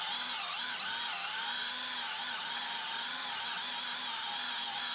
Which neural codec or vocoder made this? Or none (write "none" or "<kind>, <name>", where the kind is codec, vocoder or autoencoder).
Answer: none